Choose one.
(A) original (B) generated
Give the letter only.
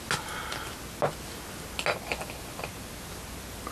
A